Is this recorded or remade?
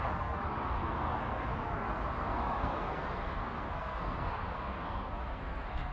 remade